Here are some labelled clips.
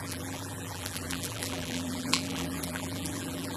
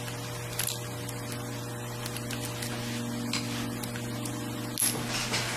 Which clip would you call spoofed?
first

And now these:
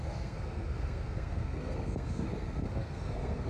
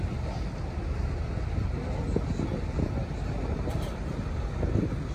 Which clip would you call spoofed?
first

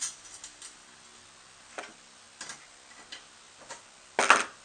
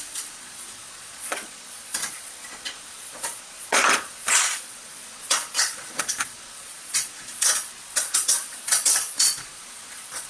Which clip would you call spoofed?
second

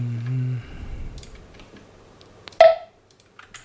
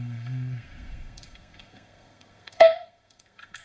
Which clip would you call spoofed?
second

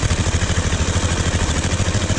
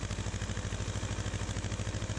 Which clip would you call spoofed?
first